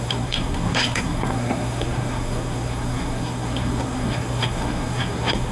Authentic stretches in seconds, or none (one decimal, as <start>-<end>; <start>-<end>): none